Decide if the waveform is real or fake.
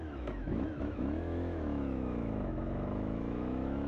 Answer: fake